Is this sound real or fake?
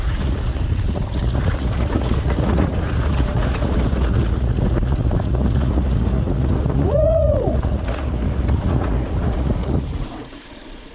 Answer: fake